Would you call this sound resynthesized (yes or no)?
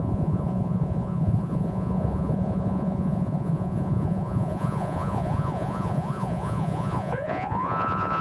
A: yes